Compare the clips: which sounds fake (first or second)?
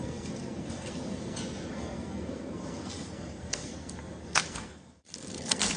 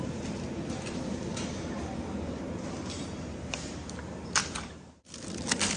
first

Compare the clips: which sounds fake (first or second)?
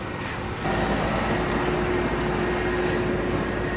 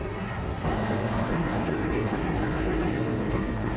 second